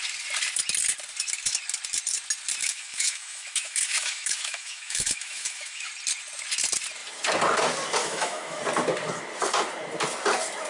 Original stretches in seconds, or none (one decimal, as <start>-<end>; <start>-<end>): 0.0-2.6; 5.9-8.0; 8.6-10.7